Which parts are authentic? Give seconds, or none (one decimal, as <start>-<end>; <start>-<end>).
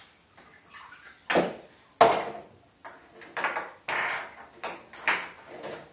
0.0-5.9